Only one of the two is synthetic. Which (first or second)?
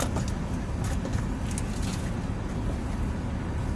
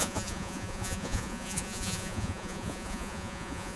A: second